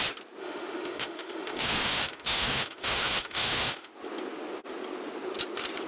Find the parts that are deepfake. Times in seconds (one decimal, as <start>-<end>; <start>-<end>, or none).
0.4-3.9